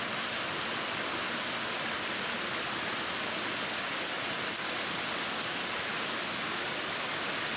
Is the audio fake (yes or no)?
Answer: no